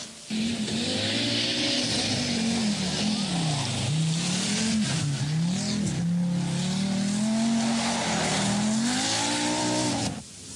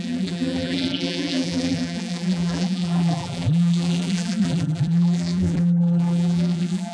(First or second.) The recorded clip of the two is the first